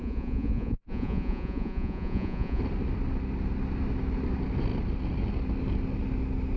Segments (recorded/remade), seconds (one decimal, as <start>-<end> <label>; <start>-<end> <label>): 0.0-2.6 remade; 2.6-6.6 recorded